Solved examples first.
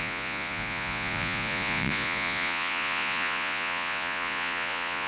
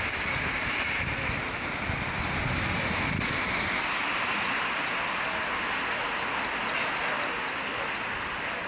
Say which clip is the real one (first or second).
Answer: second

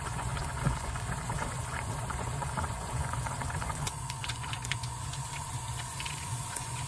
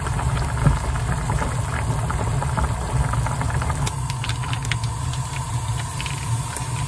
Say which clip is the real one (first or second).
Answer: second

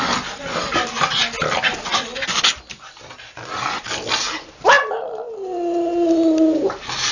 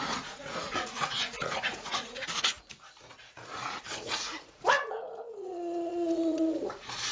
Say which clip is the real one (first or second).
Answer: first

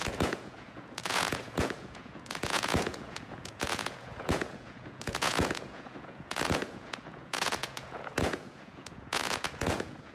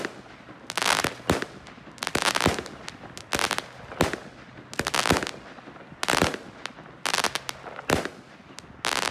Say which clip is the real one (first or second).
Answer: second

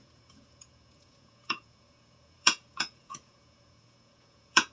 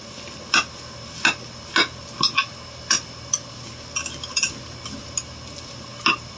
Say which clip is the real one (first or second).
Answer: second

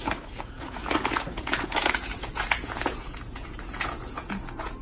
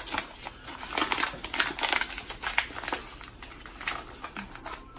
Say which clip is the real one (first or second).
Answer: second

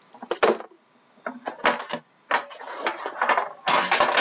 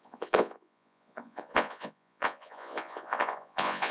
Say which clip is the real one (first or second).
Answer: first